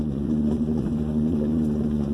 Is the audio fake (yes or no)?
yes